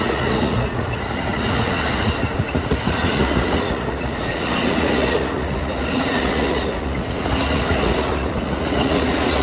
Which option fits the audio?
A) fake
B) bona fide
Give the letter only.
A